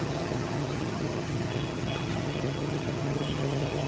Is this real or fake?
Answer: fake